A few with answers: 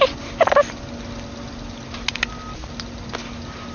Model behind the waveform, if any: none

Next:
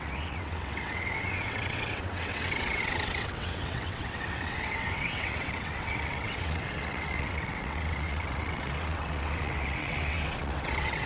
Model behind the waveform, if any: vocoder, WaveNeXt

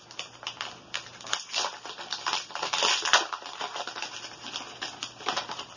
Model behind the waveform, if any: none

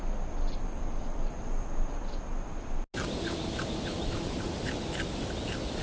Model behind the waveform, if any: none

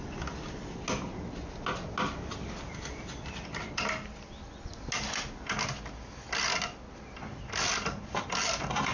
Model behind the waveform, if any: none